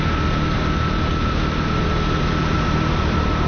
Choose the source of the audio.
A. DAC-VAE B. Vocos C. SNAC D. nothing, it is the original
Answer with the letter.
D